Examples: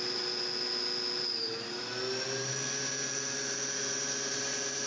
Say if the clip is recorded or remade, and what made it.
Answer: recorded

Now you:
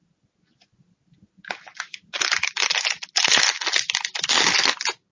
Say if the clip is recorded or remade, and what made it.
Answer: recorded